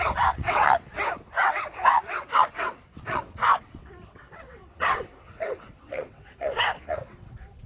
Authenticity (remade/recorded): remade